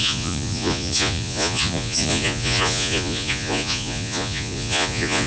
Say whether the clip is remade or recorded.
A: remade